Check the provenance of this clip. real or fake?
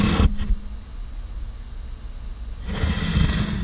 real